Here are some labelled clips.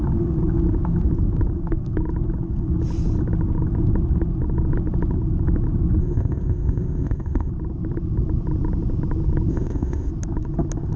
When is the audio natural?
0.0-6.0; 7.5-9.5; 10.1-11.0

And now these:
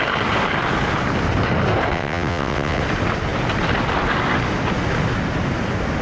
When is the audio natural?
0.0-1.9; 2.8-6.0

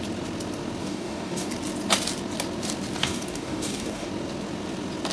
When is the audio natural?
0.0-0.8; 1.5-3.0; 4.1-5.1

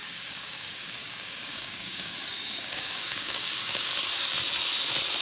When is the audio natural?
3.9-5.2

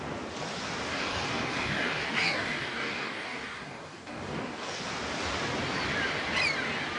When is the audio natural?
0.0-0.9; 4.8-7.0

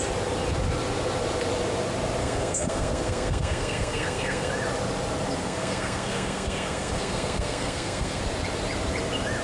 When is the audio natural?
0.0-2.2; 4.5-5.4; 8.2-9.4

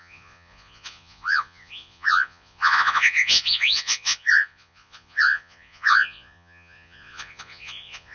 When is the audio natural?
none